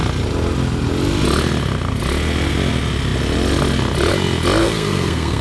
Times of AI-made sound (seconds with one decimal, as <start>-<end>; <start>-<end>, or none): 4.6-5.4